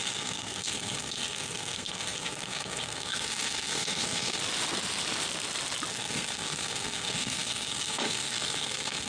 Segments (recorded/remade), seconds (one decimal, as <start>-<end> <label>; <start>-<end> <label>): 0.0-4.4 remade; 4.4-5.9 recorded; 5.9-9.1 remade